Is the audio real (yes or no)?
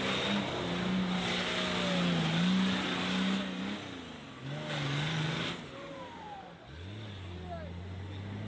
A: yes